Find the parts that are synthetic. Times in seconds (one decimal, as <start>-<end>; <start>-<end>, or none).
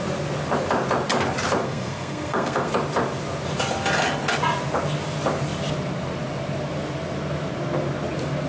1.6-2.7